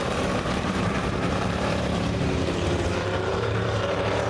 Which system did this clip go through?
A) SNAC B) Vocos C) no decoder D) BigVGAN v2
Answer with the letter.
D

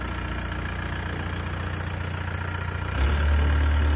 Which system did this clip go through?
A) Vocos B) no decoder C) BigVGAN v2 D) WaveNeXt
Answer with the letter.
B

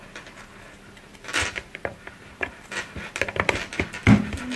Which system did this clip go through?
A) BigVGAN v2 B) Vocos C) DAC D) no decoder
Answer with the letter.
D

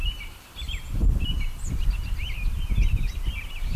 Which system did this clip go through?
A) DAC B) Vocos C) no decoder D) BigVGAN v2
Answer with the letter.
C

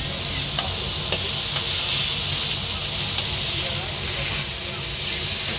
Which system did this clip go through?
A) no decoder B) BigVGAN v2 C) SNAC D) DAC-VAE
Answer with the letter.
A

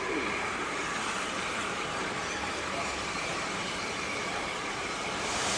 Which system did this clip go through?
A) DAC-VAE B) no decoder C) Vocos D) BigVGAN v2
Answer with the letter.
D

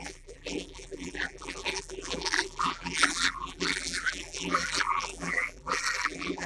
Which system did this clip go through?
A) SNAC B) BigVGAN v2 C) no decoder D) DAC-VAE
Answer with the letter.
B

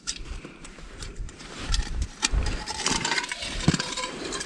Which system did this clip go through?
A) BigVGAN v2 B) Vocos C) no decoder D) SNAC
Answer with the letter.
A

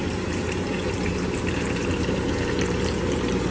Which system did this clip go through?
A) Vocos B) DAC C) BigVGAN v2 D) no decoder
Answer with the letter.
C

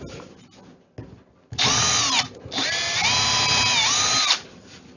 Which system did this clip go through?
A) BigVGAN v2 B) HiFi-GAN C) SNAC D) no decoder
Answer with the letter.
D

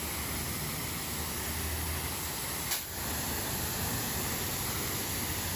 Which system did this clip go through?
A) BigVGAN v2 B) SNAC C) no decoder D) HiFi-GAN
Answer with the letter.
C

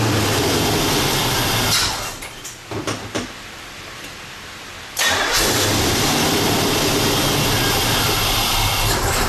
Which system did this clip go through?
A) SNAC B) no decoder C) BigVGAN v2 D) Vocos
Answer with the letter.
C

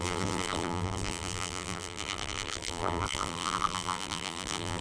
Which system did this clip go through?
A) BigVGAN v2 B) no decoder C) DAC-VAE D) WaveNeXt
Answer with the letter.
A